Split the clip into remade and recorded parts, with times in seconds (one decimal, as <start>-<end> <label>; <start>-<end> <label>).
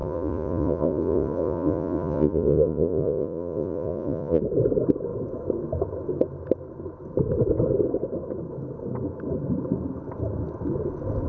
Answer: 0.0-4.4 remade; 4.4-11.3 recorded